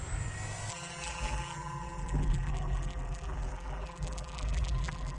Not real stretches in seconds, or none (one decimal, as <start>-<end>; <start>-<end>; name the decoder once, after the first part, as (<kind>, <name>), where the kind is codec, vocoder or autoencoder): 0.7-5.2 (vocoder, BigVGAN v2)